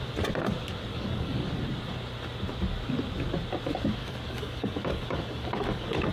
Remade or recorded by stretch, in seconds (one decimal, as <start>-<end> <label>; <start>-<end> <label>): 0.0-0.9 recorded; 0.9-1.5 remade; 1.5-4.0 recorded; 4.0-6.1 remade